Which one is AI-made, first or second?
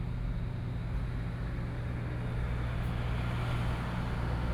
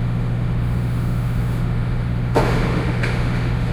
second